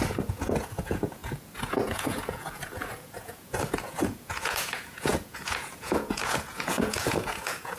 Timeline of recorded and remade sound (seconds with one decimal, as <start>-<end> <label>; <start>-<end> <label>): 0.0-7.8 remade